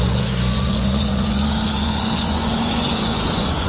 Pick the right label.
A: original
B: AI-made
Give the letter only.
B